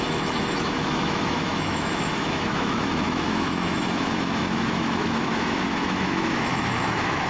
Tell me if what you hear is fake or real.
fake